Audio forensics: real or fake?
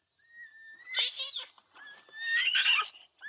real